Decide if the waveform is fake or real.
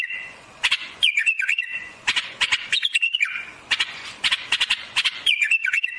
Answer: fake